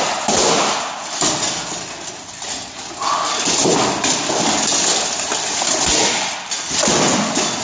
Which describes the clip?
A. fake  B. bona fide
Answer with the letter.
B